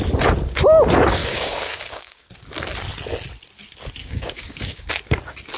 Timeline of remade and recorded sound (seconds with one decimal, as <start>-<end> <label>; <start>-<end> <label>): 0.0-1.2 recorded; 1.2-2.3 remade; 2.3-4.0 recorded; 4.0-4.9 remade; 4.9-5.6 recorded